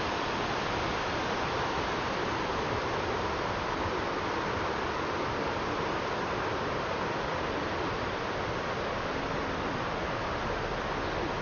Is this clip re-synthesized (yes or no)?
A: no